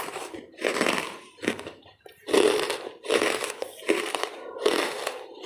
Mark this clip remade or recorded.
remade